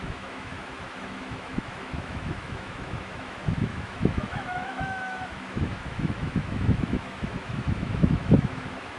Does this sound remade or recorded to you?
remade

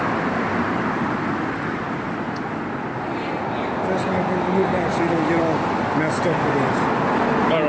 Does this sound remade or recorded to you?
recorded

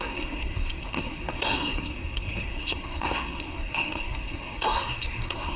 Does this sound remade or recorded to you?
remade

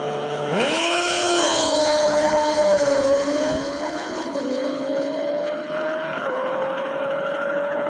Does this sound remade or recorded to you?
remade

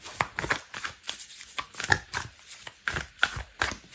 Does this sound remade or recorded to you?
recorded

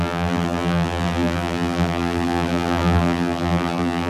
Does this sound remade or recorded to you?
remade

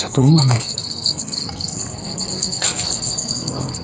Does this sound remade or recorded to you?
remade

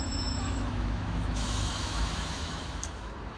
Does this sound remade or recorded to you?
remade